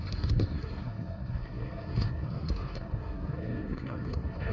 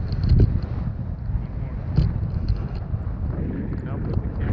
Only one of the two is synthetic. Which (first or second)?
first